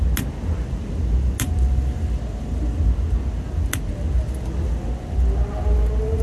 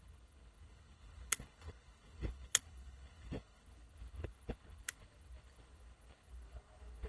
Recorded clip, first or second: first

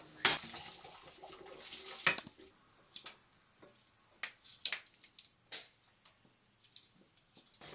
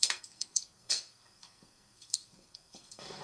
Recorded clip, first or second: first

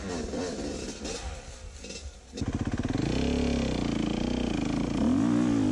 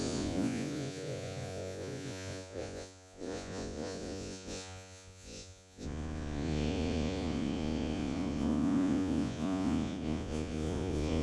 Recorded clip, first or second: first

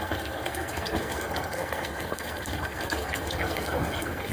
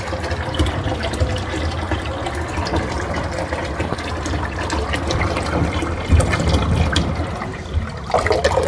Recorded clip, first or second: second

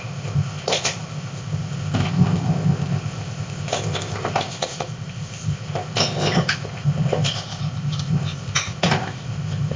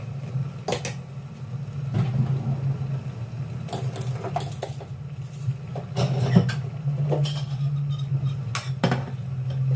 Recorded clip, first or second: second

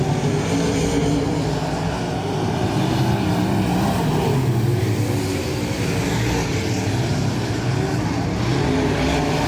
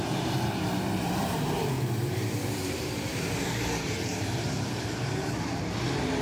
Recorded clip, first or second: first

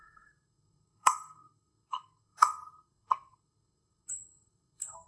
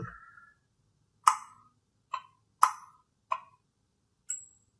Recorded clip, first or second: second